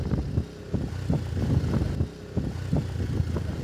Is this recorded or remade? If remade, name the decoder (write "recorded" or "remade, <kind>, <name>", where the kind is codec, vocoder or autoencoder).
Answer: recorded